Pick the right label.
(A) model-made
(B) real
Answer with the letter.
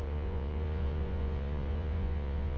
A